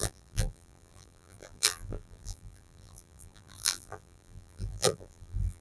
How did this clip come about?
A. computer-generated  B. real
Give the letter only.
A